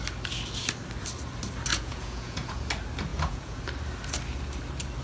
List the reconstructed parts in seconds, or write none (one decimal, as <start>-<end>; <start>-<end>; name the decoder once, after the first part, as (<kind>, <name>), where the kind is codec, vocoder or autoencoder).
1.7-2.7 (vocoder, Vocos); 3.1-3.6